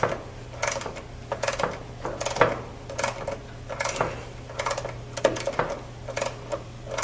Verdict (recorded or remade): recorded